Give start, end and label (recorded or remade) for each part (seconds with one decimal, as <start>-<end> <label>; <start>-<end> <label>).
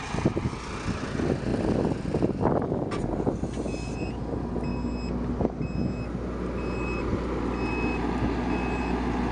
0.0-9.3 recorded